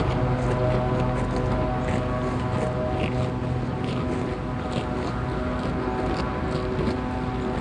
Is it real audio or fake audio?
real